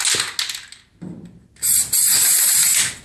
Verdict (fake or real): real